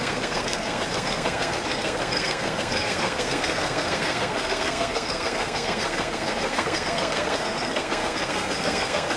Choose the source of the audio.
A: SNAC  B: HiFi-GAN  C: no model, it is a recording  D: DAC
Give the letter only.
A